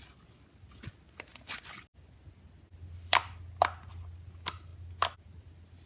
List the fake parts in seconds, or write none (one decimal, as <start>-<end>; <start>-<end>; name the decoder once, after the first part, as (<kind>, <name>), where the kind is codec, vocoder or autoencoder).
none